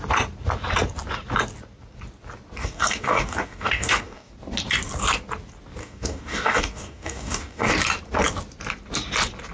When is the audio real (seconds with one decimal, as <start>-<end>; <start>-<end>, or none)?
0.0-2.6; 4.3-5.8; 7.7-9.5